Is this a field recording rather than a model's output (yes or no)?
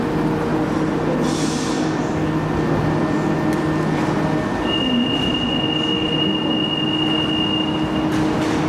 yes